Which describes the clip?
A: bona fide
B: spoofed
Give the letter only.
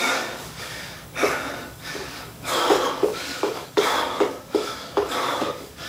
B